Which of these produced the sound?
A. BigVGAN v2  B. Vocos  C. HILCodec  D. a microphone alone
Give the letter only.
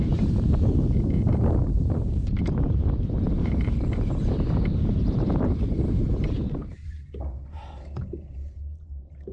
A